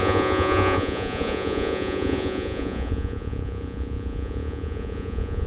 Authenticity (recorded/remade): remade